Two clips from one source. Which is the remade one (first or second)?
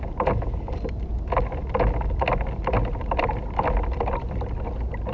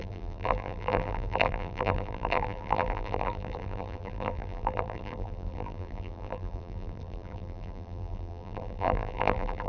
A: second